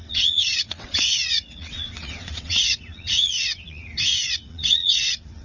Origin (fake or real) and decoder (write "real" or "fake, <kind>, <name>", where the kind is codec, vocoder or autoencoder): fake, vocoder, WaveNeXt